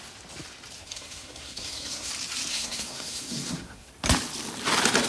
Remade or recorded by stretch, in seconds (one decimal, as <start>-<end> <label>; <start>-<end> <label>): 0.0-0.8 recorded; 0.8-2.1 remade; 2.1-2.5 recorded; 2.5-3.9 remade; 3.9-5.1 recorded